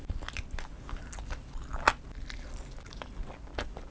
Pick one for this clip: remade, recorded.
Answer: recorded